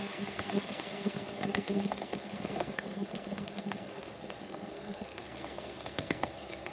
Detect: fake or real fake